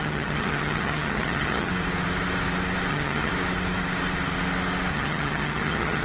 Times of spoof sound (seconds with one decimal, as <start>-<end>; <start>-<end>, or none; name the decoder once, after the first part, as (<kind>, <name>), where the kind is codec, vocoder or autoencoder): 0.0-1.7 (vocoder, HiFi-GAN); 2.9-3.3; 4.9-6.0